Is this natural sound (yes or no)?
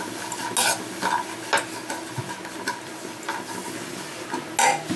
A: yes